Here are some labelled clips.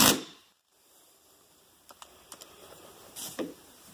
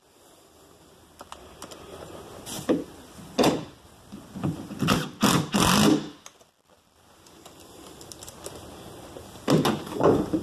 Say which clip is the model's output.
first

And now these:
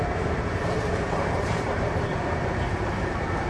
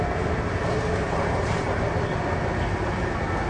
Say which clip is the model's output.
first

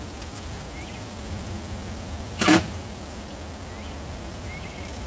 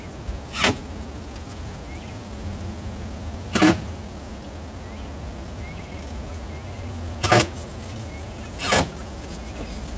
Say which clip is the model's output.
first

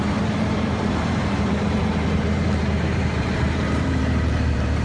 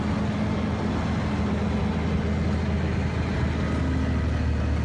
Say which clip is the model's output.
first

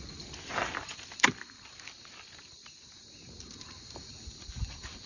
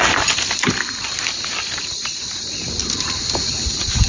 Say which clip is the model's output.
second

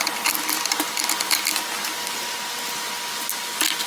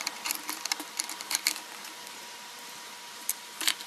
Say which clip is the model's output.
second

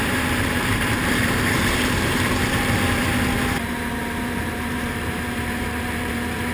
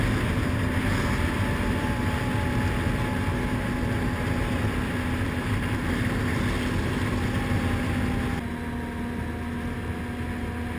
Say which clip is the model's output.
first